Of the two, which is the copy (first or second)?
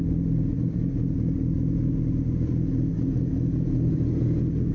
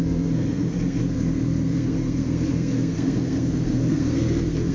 second